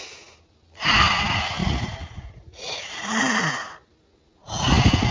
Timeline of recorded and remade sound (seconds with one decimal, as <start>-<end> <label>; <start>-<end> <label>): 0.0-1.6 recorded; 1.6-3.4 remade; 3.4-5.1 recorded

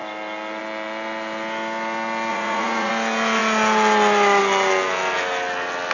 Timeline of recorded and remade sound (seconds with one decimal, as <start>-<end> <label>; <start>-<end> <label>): 0.0-2.3 recorded; 2.3-2.9 remade; 2.9-5.9 recorded

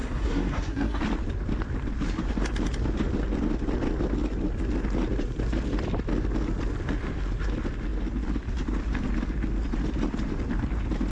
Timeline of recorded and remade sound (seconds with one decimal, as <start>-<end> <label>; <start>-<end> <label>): 0.0-1.0 remade; 1.0-11.1 recorded

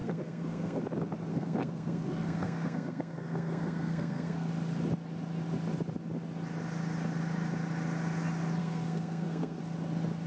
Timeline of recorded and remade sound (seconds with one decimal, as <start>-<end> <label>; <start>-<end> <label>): 0.0-0.8 remade; 0.8-1.3 recorded; 1.3-4.5 remade; 4.5-8.6 recorded; 8.6-9.6 remade; 9.6-10.3 recorded

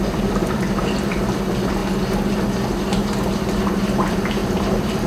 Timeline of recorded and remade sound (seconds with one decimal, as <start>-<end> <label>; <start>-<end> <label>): 0.0-1.8 remade; 1.8-3.3 recorded; 3.3-5.1 remade

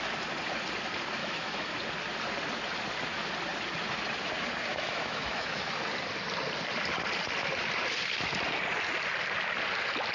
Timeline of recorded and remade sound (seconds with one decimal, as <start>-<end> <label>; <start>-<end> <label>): 0.0-1.2 recorded; 1.2-1.7 remade; 1.7-4.7 recorded; 4.7-5.7 remade; 5.7-10.1 recorded